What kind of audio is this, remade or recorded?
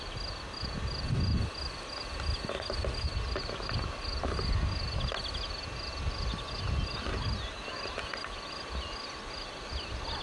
recorded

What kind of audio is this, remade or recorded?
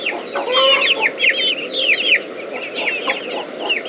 recorded